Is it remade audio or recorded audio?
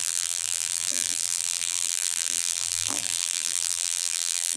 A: remade